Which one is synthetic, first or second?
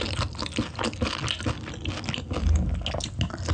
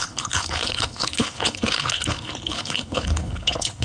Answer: second